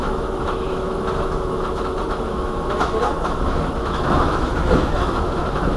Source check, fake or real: fake